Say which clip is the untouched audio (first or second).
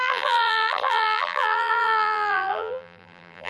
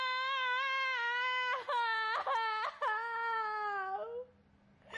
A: second